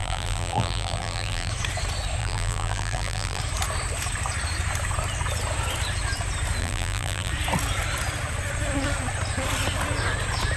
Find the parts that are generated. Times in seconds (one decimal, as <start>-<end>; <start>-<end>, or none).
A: 0.0-1.5; 2.2-3.4; 6.6-7.3